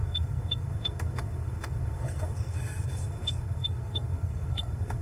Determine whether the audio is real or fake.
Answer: fake